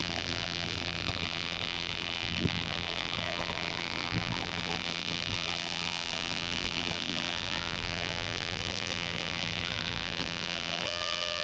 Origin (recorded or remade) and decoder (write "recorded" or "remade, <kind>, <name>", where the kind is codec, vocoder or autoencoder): remade, vocoder, BigVGAN v2